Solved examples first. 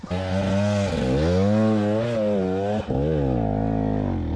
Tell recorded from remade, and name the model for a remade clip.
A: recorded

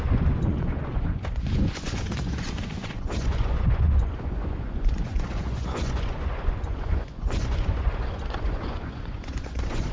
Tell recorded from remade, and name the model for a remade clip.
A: remade, vocoder, Vocos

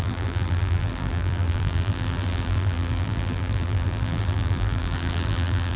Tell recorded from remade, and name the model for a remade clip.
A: remade, vocoder, BigVGAN v2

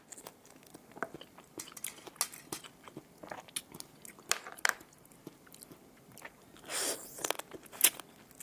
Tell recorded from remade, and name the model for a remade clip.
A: recorded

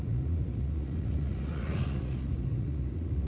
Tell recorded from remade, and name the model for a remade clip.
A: remade, vocoder, Vocos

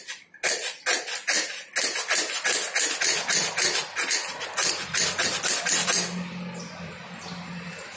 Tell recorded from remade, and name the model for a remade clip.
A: recorded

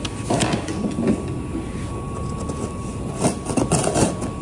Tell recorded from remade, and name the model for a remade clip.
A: recorded